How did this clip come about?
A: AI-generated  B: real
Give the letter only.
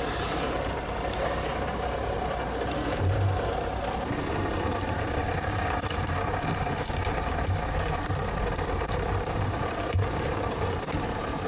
A